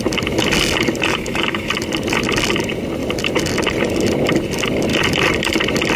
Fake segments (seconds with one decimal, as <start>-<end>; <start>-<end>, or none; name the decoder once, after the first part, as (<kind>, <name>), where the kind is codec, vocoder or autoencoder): 1.1-1.7 (autoencoder, DAC-VAE)